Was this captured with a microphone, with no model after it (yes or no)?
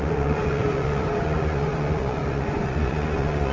no